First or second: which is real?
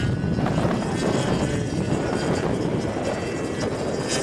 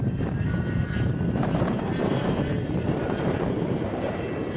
first